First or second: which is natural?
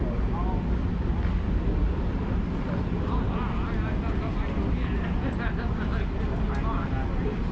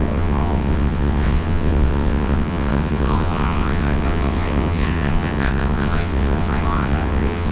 first